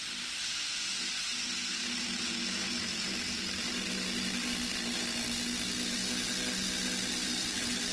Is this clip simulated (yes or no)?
no